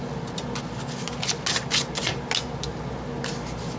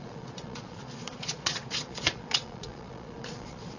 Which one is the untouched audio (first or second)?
first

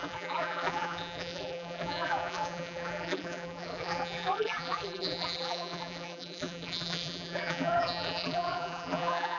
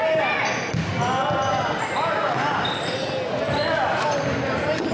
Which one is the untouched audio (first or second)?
second